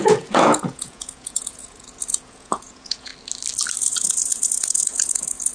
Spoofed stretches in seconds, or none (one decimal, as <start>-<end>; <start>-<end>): 0.0-3.1; 3.8-5.5